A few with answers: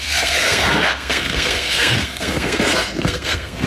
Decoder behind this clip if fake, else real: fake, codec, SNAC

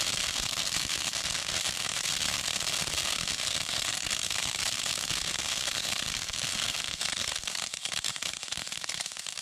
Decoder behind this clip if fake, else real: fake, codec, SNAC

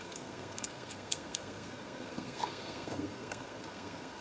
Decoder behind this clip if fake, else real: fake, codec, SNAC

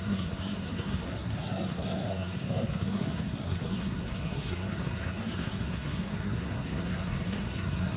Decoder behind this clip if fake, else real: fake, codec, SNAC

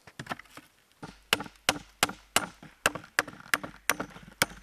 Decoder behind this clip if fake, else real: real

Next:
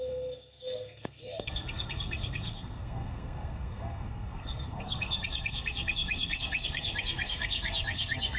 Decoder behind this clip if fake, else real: fake, codec, SNAC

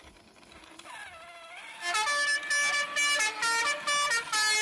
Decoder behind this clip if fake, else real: real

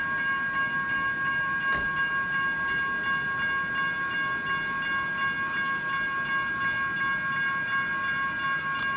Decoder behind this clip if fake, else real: real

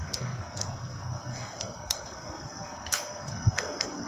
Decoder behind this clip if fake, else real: fake, codec, SNAC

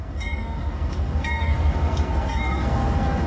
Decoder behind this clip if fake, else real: fake, codec, SNAC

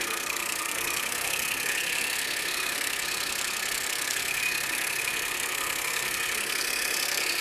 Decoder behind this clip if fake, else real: fake, codec, SNAC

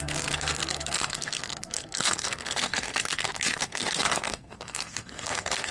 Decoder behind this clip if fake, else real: fake, codec, SNAC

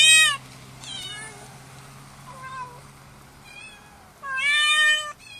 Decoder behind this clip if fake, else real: real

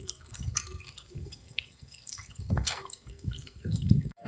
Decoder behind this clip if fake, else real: fake, codec, SNAC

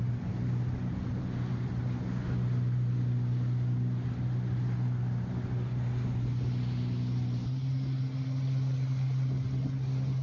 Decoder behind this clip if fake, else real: real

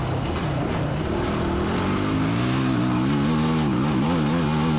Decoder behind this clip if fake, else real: real